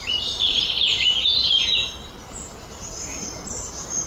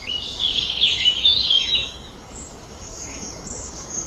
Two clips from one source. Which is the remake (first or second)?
second